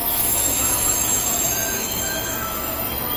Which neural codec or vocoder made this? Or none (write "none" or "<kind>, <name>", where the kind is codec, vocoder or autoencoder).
autoencoder, DAC-VAE